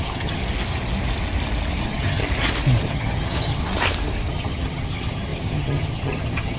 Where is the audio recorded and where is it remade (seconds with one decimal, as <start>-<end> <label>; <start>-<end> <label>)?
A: 0.0-0.4 remade; 0.4-1.8 recorded; 1.8-2.2 remade; 2.2-2.8 recorded; 2.8-3.6 remade; 3.6-4.3 recorded; 4.3-6.6 remade